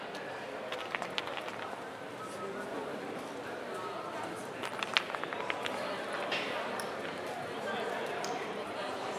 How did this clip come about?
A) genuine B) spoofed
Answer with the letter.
B